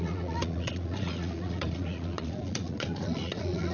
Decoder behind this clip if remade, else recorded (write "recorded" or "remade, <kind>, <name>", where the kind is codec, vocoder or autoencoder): remade, vocoder, Vocos